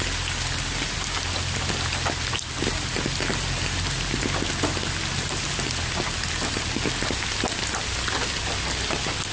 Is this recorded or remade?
recorded